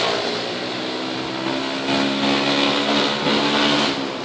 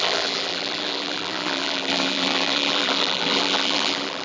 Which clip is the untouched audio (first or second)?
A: first